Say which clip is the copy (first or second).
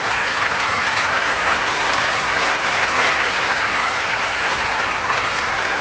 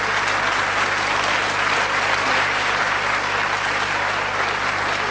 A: first